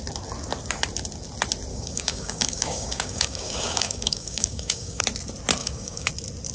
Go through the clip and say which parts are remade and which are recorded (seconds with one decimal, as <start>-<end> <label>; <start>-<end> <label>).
0.0-1.7 recorded; 1.7-5.0 remade; 5.0-5.6 recorded; 5.6-6.1 remade; 6.1-6.5 recorded